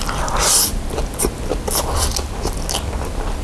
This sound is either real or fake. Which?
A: real